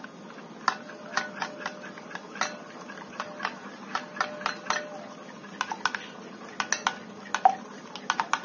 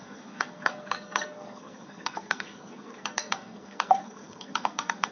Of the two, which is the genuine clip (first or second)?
first